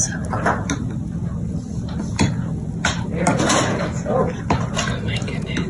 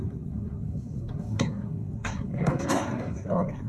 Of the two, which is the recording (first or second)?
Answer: first